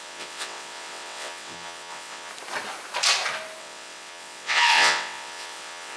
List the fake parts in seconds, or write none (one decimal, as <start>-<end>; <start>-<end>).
0.0-2.3; 3.6-6.0